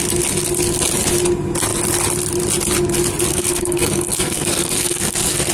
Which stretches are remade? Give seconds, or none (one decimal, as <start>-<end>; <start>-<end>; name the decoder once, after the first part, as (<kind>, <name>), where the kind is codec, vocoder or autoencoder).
3.3-5.5 (codec, SNAC)